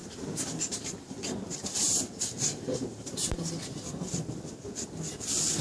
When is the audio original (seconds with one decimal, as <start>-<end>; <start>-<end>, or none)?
3.4-5.6